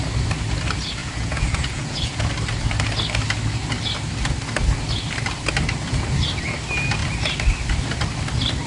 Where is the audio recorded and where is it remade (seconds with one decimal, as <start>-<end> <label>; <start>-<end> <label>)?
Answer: 0.0-1.0 recorded; 1.0-2.3 remade; 2.3-8.7 recorded